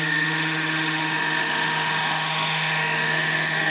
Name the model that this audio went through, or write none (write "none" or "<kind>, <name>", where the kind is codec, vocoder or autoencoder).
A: autoencoder, DAC-VAE